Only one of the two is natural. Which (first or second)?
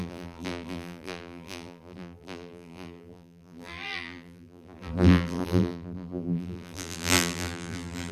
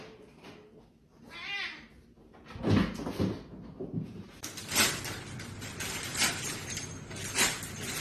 second